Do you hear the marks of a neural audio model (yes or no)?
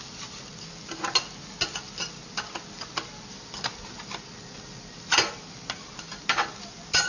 no